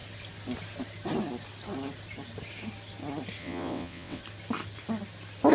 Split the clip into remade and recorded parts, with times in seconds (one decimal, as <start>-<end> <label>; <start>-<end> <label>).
0.0-3.4 recorded; 3.4-4.2 remade; 4.2-5.5 recorded